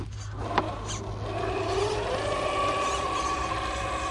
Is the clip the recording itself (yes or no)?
yes